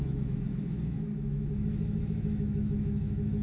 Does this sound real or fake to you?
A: fake